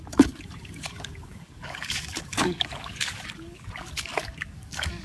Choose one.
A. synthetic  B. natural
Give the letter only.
A